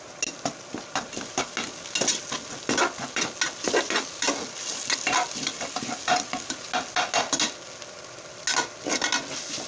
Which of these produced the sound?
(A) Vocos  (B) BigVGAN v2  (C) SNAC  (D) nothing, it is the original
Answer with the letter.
D